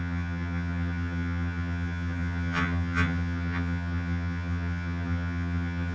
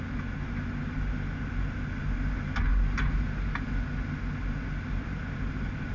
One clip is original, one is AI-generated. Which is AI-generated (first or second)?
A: first